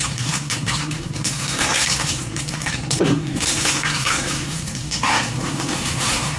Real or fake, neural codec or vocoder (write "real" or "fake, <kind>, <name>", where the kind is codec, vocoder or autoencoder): fake, codec, SNAC